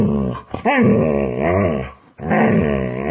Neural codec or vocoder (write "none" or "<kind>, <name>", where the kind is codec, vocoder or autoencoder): none